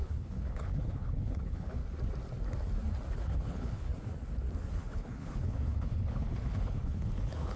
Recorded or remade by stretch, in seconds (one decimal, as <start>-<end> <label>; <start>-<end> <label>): 0.0-1.8 remade; 1.8-3.2 recorded; 3.2-3.9 remade; 3.9-4.7 recorded; 4.7-7.6 remade